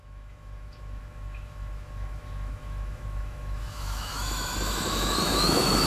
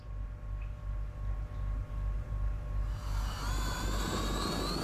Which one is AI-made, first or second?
first